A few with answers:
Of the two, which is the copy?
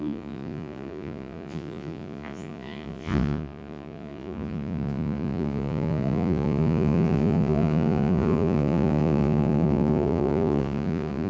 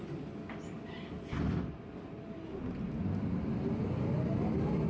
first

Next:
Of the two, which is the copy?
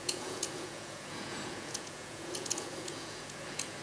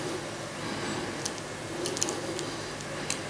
first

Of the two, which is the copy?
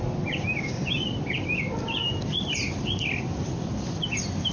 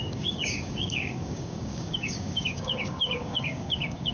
second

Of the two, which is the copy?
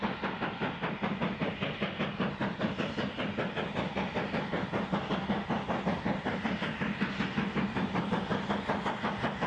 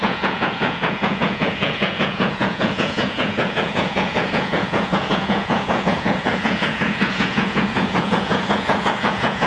second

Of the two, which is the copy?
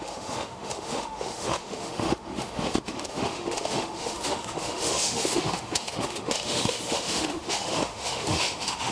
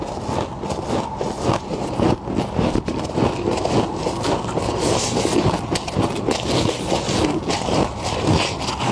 first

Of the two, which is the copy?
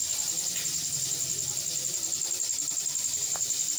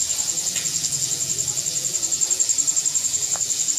second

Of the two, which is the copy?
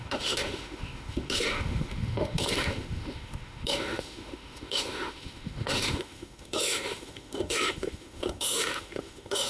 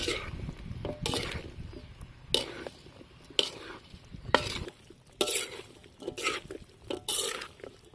first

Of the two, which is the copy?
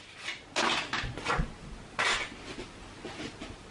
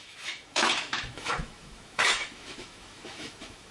second